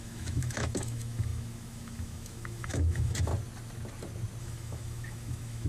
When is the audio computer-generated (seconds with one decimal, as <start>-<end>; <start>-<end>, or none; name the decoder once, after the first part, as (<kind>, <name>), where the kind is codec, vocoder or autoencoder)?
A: 0.0-3.3 (autoencoder, DAC-VAE); 4.4-5.7

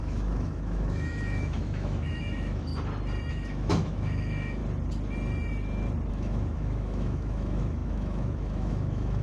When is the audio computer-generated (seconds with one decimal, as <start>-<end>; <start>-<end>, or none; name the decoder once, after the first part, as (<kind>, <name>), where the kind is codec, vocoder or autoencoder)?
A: 0.0-2.7 (autoencoder, DAC-VAE); 3.3-4.6; 6.1-9.2

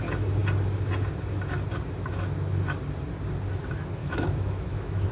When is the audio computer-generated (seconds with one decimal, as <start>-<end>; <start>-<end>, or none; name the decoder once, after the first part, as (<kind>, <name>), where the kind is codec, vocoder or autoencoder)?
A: 4.0-5.1 (autoencoder, DAC-VAE)

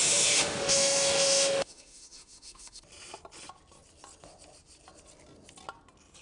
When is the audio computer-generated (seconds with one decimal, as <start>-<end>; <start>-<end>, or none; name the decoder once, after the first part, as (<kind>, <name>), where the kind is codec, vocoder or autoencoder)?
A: 0.0-2.8 (autoencoder, DAC-VAE)

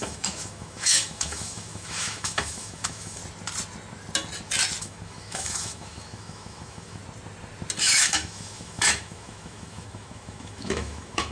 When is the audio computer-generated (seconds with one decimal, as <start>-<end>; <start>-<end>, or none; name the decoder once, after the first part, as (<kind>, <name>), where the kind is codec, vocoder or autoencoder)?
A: 0.0-3.2 (autoencoder, DAC-VAE); 4.8-7.0; 7.8-11.3

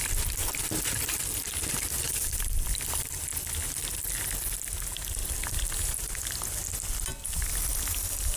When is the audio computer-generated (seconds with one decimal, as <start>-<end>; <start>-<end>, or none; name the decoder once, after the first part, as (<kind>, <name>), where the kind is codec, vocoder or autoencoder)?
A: none